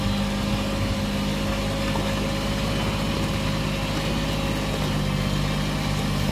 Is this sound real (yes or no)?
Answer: yes